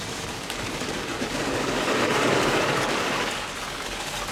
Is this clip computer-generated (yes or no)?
yes